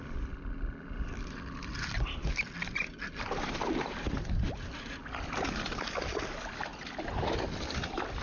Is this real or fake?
real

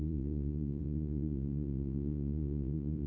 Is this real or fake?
fake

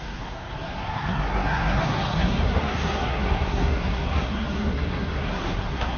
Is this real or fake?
fake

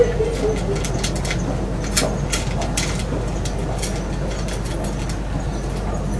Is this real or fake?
real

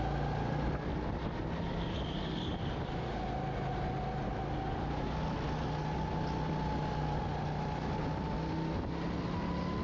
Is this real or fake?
real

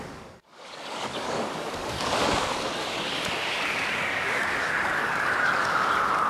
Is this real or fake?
fake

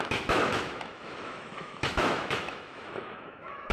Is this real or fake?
fake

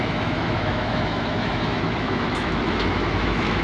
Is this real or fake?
fake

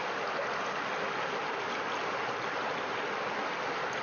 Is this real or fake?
real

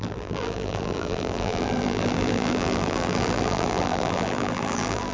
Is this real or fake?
fake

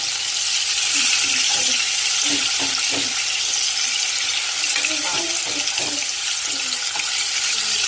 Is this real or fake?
real